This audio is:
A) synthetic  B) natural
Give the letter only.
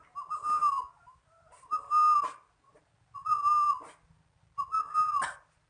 B